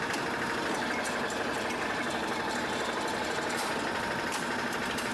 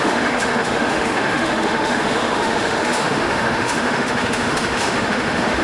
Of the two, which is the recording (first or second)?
first